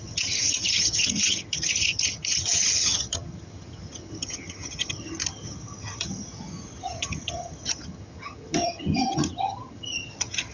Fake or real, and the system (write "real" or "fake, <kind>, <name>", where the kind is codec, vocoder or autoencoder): fake, vocoder, HiFi-GAN